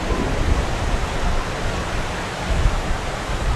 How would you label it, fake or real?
real